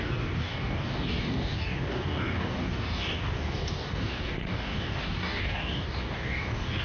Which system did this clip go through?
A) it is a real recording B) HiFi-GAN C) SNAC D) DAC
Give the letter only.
D